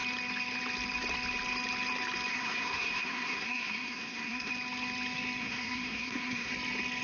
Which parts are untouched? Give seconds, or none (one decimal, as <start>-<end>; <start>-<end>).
0.0-2.3; 4.5-5.4; 6.5-7.0